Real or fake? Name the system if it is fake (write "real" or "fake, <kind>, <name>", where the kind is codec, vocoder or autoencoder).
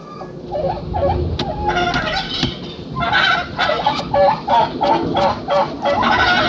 real